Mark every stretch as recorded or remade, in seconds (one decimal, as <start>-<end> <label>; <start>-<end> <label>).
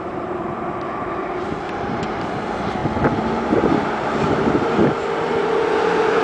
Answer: 0.0-2.8 remade; 2.8-3.9 recorded; 3.9-4.8 remade; 4.8-5.8 recorded; 5.8-6.2 remade